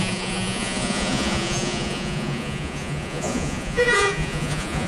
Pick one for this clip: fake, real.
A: fake